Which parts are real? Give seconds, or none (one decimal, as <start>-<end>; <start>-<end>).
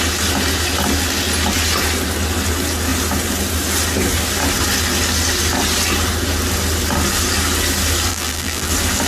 0.0-8.1; 8.7-9.1